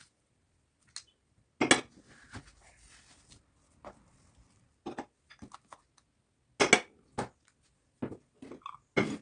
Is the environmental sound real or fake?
real